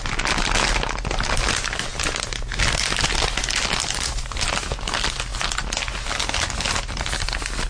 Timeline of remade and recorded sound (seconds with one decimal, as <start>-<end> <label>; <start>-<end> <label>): 0.0-7.7 recorded